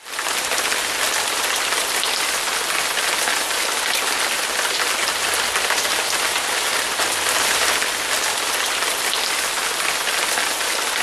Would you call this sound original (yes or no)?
yes